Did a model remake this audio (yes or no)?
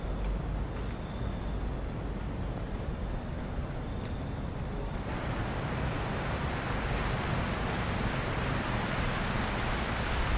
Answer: no